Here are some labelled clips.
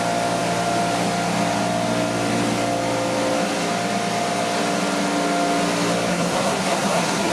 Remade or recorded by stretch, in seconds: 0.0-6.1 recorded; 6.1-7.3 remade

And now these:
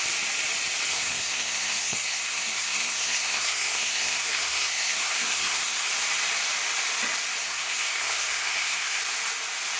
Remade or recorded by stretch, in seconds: 0.0-0.9 recorded; 0.9-5.9 remade; 5.9-7.4 recorded; 7.4-9.0 remade; 9.0-9.8 recorded

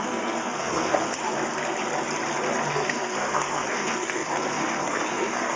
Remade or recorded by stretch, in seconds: 0.0-1.2 remade; 1.2-2.7 recorded; 2.7-5.6 remade

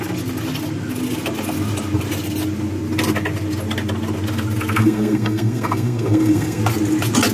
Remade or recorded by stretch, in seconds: 0.0-4.8 recorded; 4.8-6.6 remade; 6.6-7.3 recorded

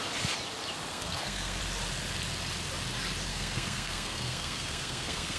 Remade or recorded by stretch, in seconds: 0.0-0.9 recorded; 0.9-1.6 remade; 1.6-3.3 recorded; 3.3-5.4 remade

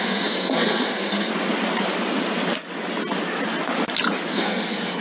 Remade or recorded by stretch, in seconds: 0.0-1.3 remade; 1.3-4.3 recorded; 4.3-5.0 remade